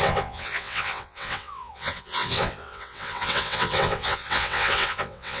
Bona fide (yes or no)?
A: no